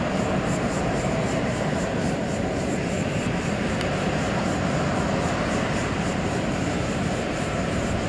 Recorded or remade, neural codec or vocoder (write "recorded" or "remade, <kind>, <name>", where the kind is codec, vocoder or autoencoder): remade, vocoder, BigVGAN v2